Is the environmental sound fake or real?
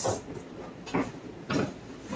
real